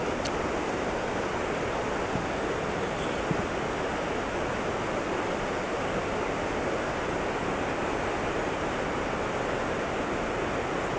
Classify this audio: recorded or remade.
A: recorded